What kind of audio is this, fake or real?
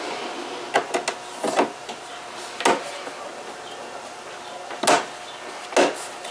real